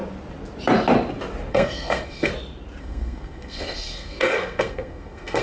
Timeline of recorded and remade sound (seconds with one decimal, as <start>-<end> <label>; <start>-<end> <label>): 0.0-1.5 recorded; 1.5-2.3 remade; 2.3-2.8 recorded; 2.8-5.4 remade